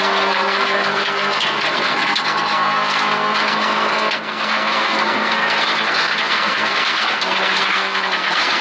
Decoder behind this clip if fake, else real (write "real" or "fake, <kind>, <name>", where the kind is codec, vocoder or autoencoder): fake, codec, SNAC